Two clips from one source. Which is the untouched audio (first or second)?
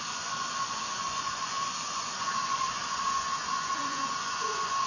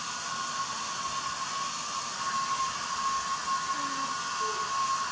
second